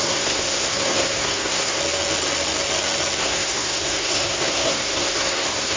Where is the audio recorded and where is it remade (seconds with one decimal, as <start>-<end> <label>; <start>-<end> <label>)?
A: 0.0-1.8 remade; 1.8-3.2 recorded; 3.2-5.8 remade

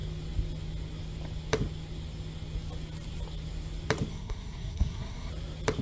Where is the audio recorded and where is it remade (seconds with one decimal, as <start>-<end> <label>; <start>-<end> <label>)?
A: 0.0-4.1 recorded; 4.1-5.3 remade; 5.3-5.8 recorded

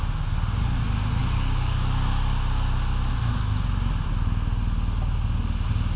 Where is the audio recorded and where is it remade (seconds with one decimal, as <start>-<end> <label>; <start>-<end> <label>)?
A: 0.0-6.0 recorded

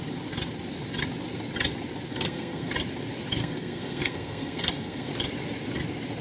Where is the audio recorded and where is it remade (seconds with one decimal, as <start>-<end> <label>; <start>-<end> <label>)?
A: 0.0-2.1 recorded; 2.1-2.7 remade; 2.7-3.4 recorded; 3.4-5.1 remade; 5.1-6.2 recorded

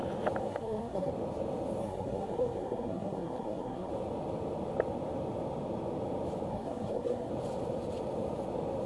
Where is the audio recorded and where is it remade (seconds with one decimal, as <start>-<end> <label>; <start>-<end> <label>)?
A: 0.0-0.4 recorded; 0.4-1.1 remade; 1.1-1.8 recorded; 1.8-3.9 remade; 3.9-6.5 recorded; 6.5-7.3 remade; 7.3-8.9 recorded